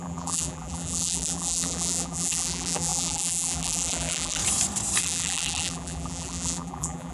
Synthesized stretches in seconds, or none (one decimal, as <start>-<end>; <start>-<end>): 0.0-4.4; 5.0-7.1